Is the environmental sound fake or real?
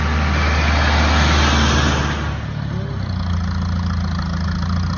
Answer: real